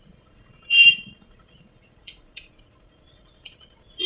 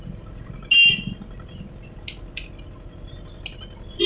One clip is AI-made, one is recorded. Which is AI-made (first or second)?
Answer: first